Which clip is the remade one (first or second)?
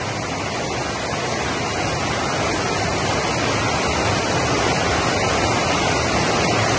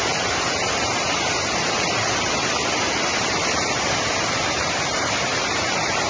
second